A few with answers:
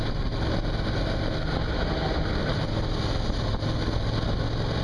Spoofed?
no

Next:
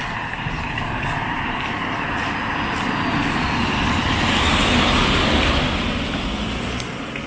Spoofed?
no